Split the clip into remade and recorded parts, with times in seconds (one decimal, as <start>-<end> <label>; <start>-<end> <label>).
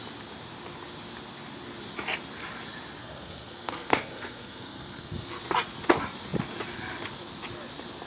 0.0-3.0 recorded; 3.0-5.4 remade; 5.4-8.1 recorded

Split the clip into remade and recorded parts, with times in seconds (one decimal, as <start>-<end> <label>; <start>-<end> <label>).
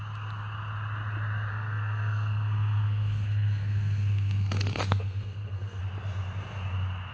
0.0-1.5 recorded; 1.5-5.8 remade; 5.8-7.1 recorded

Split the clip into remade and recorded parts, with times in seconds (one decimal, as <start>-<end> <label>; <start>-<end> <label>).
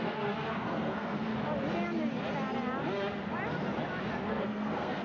0.0-1.3 remade; 1.3-4.3 recorded; 4.3-5.0 remade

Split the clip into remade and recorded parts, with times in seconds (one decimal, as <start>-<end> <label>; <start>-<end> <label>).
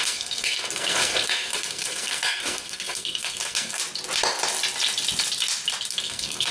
0.0-3.8 remade; 3.8-5.9 recorded; 5.9-6.5 remade